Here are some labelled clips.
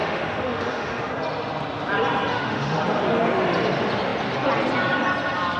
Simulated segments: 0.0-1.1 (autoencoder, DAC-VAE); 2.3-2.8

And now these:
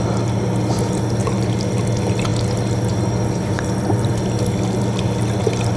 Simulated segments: none

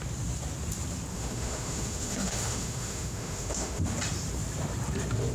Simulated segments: 1.1-3.8 (autoencoder, DAC-VAE)

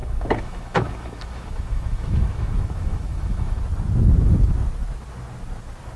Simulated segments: 0.0-3.6 (autoencoder, DAC-VAE)

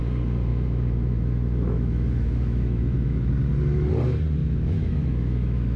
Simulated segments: 0.5-3.3 (autoencoder, DAC-VAE); 4.4-5.8